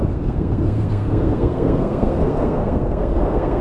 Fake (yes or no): yes